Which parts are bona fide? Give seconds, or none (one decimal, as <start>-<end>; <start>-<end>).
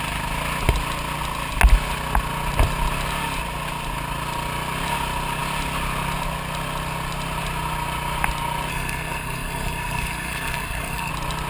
0.0-8.7; 11.1-11.5